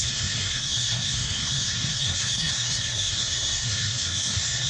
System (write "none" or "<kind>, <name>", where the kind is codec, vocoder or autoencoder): codec, SNAC